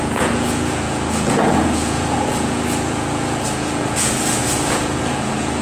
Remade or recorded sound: remade